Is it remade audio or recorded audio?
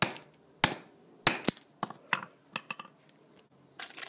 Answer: recorded